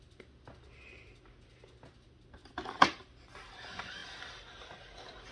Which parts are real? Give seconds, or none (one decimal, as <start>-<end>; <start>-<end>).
0.0-2.4; 3.5-4.0